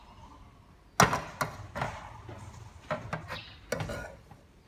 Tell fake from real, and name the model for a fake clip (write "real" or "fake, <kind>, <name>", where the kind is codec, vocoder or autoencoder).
real